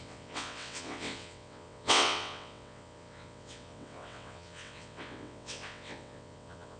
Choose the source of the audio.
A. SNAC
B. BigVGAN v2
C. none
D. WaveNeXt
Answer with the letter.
D